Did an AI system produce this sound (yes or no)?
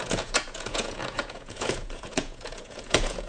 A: yes